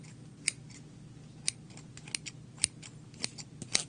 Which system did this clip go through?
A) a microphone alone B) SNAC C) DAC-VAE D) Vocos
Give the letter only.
A